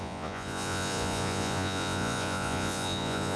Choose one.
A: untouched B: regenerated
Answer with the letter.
B